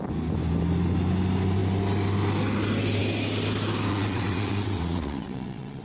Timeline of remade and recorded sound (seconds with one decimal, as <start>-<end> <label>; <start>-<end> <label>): 0.0-3.9 recorded; 3.9-5.8 remade